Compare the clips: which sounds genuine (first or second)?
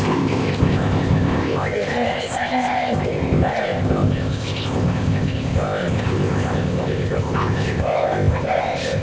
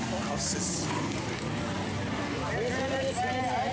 second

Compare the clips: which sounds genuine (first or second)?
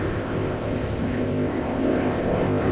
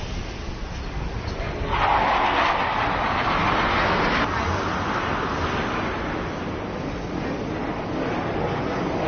second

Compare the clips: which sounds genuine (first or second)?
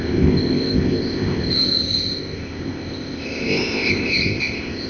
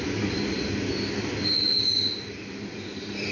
second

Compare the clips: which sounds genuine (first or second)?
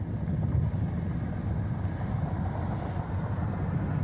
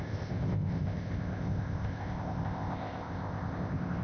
first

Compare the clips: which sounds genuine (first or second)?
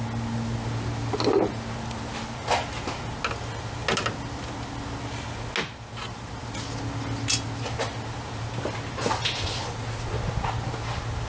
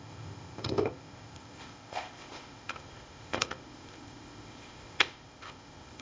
first